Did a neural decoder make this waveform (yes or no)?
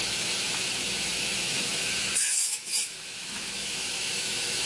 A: yes